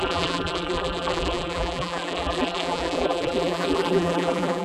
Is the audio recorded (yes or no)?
no